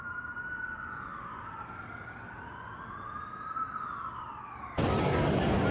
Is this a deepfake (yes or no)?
no